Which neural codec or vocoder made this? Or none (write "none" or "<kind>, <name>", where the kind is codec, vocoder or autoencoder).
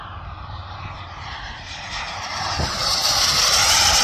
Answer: vocoder, BigVGAN v2